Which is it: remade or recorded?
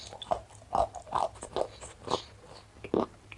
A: recorded